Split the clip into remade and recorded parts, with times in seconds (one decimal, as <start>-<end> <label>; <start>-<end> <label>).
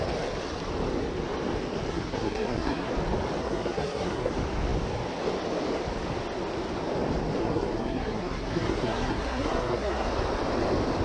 0.0-1.9 recorded; 1.9-2.9 remade; 2.9-3.4 recorded; 3.4-4.3 remade; 4.3-7.4 recorded; 7.4-10.1 remade; 10.1-11.0 recorded